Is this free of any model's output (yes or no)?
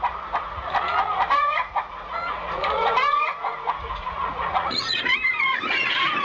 no